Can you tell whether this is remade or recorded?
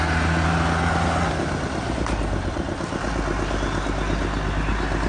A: recorded